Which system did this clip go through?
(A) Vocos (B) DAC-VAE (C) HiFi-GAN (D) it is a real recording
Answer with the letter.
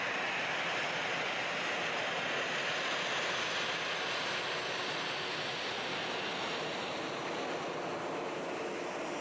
D